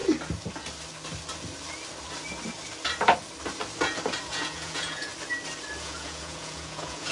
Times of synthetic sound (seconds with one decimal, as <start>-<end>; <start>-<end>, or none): 4.3-5.1; 5.8-7.1